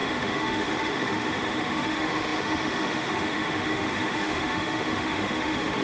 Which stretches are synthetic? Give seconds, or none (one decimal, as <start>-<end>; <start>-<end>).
0.0-5.8